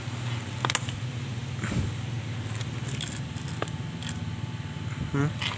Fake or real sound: real